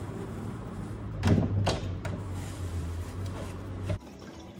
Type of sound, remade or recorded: remade